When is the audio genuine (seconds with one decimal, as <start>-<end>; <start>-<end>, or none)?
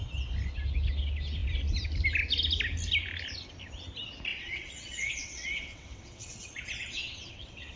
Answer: 0.0-4.3